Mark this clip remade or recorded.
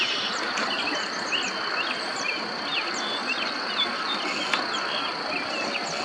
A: recorded